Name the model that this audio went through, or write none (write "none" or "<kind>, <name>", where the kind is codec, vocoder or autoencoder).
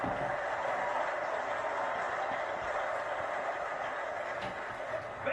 none